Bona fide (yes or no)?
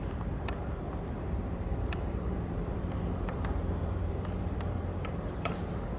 no